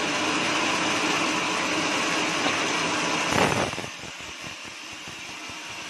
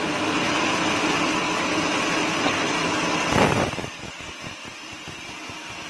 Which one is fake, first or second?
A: first